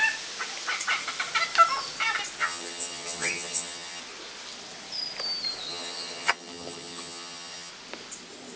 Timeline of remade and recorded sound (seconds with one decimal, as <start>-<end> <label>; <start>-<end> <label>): 0.0-2.4 recorded; 2.4-4.0 remade; 4.0-5.7 recorded; 5.7-7.7 remade; 7.7-8.6 recorded